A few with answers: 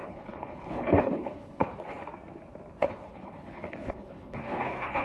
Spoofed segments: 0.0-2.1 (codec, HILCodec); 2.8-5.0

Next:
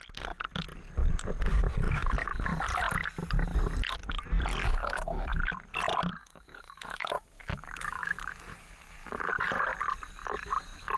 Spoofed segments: 4.6-5.4 (autoencoder, DAC-VAE); 6.2-9.3